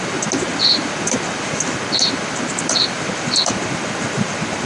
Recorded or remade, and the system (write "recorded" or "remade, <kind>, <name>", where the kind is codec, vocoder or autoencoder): recorded